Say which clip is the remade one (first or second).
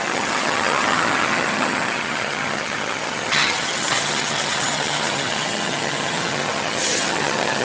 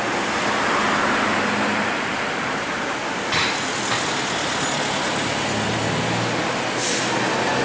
first